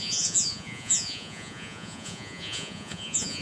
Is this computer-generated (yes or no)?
yes